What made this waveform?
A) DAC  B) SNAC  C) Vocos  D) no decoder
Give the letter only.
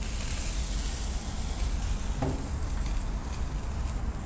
D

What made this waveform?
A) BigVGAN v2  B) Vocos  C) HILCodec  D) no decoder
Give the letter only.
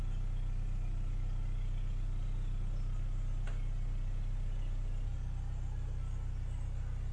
D